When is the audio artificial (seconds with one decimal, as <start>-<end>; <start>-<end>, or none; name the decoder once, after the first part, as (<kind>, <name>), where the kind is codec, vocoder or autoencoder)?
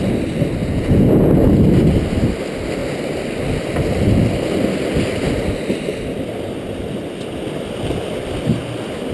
0.6-1.3 (vocoder, Vocos)